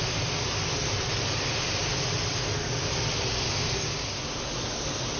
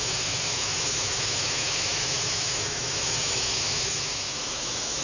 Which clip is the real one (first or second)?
first